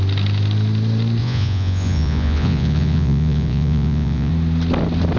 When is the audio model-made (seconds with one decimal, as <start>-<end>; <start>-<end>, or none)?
1.2-4.3